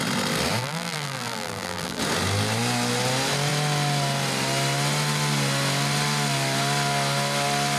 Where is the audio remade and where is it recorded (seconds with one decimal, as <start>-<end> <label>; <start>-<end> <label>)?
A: 0.0-0.6 recorded; 0.6-2.0 remade; 2.0-7.8 recorded